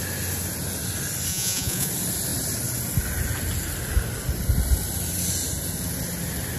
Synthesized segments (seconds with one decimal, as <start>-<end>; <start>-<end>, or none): 1.3-1.9